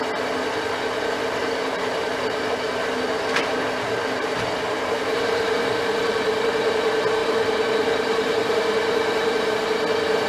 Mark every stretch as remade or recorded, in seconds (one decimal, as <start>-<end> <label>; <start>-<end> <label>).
0.0-1.4 recorded; 1.4-5.7 remade; 5.7-7.2 recorded; 7.2-9.5 remade; 9.5-10.3 recorded